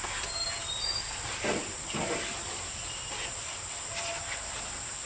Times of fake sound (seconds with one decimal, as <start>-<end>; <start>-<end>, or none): 0.6-3.7